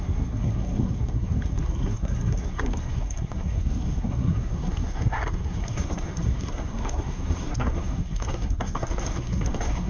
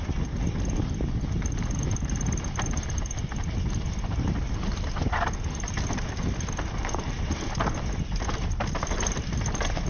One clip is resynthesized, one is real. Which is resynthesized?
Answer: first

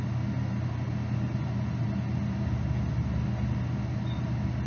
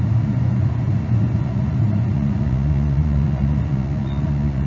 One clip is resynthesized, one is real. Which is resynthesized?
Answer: second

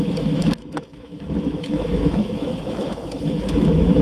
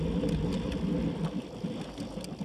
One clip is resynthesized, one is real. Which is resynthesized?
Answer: first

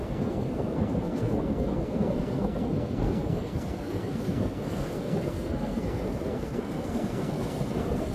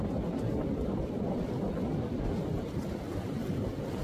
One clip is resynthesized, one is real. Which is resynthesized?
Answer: first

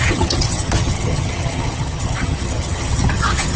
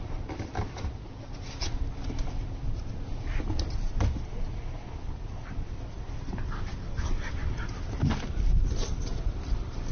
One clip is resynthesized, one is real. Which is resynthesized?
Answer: first